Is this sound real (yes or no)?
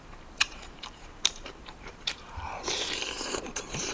no